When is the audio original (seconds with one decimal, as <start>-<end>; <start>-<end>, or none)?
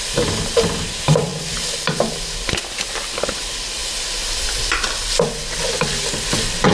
0.0-6.7